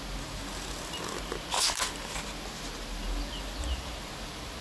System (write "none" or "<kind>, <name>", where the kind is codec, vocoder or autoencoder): none